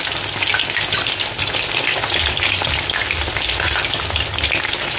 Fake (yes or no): no